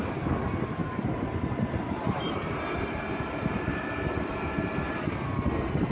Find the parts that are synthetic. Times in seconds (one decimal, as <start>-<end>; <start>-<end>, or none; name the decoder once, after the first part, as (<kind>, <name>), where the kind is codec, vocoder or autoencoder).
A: 0.8-4.3 (vocoder, BigVGAN v2)